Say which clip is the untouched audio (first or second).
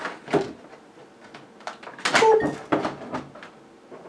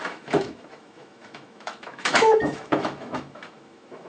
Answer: first